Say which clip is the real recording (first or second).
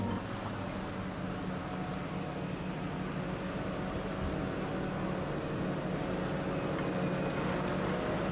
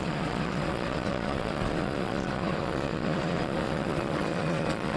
first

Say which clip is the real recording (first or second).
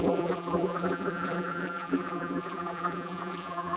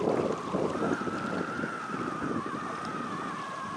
second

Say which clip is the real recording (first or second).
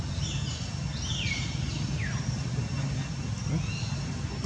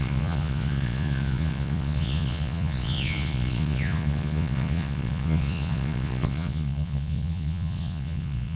first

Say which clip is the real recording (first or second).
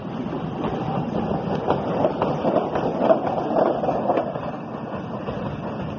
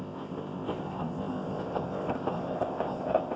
first